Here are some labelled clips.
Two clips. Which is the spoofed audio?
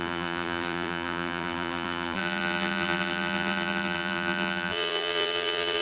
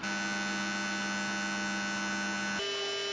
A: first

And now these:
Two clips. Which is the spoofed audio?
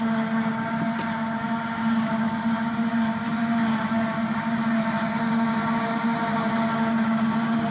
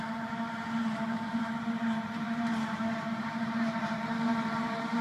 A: second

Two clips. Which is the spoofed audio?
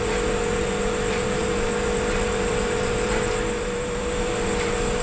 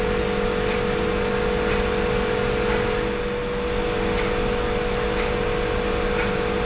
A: first